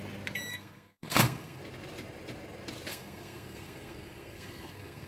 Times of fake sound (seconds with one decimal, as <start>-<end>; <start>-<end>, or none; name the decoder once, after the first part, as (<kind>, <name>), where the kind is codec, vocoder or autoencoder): 0.5-1.6 (codec, SNAC); 2.9-5.1